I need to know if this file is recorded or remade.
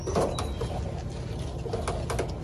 recorded